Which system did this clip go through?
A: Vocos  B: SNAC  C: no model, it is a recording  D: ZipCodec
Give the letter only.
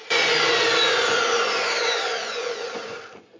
A